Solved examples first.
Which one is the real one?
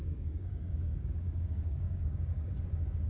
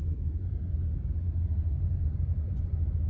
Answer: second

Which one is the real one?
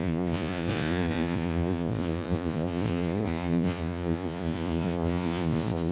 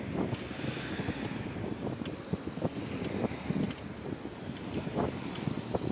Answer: second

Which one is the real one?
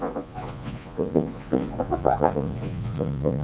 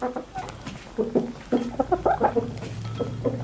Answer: second